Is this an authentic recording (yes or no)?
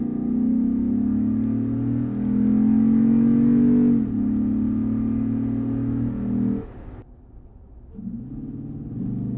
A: yes